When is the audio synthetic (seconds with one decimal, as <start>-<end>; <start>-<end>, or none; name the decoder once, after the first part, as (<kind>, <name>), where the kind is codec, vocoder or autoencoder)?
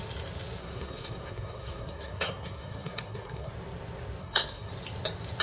0.6-3.5 (codec, SNAC); 4.2-4.7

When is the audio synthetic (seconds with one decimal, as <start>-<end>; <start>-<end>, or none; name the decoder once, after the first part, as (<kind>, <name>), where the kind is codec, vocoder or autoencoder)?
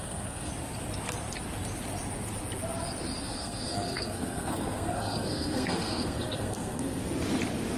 0.0-0.5 (codec, SNAC); 3.2-7.0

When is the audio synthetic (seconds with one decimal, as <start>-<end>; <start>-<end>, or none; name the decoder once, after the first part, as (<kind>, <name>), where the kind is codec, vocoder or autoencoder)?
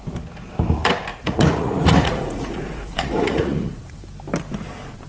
1.1-4.0 (vocoder, Vocos)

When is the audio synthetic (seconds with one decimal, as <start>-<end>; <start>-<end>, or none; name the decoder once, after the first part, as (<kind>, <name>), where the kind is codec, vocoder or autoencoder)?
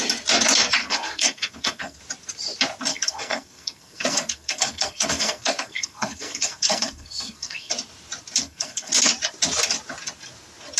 0.8-2.0 (codec, SNAC); 2.9-7.7; 8.4-8.9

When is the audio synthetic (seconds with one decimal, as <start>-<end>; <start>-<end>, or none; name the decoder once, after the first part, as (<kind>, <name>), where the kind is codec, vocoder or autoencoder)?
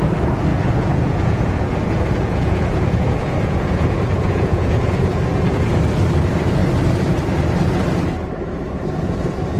0.5-5.2 (vocoder, Vocos)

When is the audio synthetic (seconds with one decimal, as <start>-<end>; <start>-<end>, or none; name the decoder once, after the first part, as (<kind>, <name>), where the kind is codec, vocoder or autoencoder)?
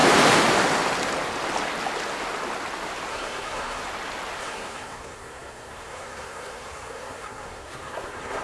3.1-3.8 (codec, SNAC); 4.4-8.4